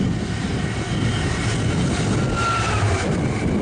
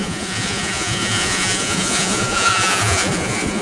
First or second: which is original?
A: first